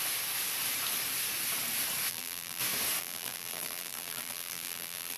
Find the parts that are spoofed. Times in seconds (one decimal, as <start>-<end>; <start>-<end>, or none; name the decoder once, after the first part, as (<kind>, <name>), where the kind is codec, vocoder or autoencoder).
2.1-2.6 (vocoder, BigVGAN v2); 3.0-5.2